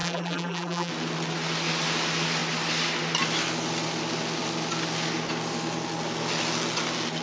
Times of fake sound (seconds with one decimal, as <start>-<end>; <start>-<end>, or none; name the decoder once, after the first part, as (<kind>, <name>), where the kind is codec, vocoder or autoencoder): 0.0-0.9 (vocoder, BigVGAN v2)